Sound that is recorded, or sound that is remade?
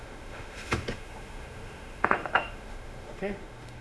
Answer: remade